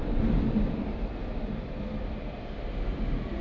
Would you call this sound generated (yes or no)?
no